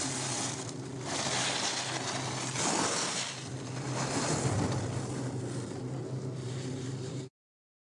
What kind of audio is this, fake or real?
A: real